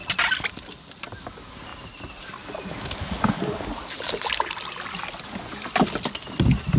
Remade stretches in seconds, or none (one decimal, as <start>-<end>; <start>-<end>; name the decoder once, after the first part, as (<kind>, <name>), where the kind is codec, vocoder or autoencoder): none